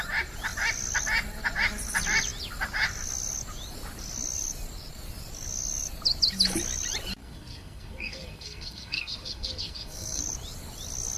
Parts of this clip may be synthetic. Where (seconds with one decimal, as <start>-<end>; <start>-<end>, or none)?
7.2-10.2